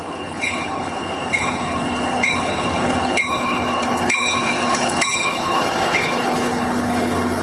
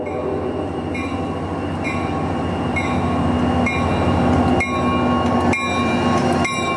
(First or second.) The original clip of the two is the second